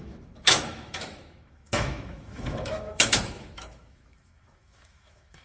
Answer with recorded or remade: remade